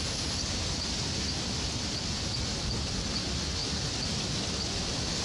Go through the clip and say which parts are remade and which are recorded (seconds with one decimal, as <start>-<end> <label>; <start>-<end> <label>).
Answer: 0.0-5.2 recorded